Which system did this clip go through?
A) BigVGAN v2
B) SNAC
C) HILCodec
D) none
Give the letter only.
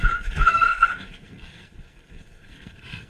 B